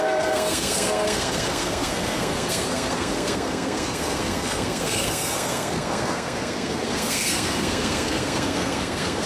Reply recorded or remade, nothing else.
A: remade